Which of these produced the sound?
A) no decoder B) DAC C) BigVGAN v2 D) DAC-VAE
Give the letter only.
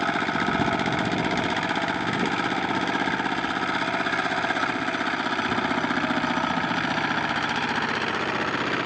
A